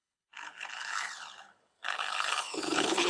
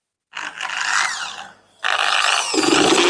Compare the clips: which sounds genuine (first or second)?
second